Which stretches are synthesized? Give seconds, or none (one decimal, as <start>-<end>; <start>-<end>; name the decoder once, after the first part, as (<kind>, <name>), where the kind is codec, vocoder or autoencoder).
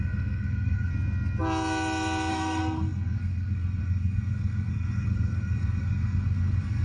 0.0-0.9 (codec, SNAC); 2.3-6.8